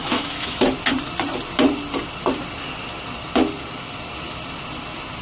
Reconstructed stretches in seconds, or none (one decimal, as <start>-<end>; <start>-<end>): 0.0-0.6